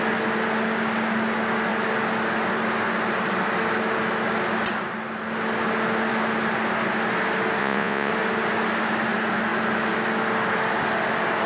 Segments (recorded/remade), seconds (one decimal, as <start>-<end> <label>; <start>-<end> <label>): 0.0-7.6 recorded; 7.6-8.1 remade; 8.1-11.5 recorded

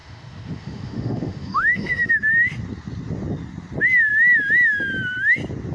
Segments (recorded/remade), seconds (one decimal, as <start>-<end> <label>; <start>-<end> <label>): 0.0-2.1 remade; 2.1-5.7 recorded

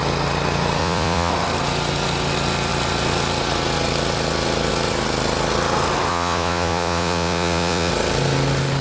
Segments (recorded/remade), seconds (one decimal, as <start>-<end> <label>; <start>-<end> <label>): 0.0-0.8 recorded; 0.8-1.3 remade; 1.3-6.1 recorded; 6.1-7.9 remade; 7.9-8.8 recorded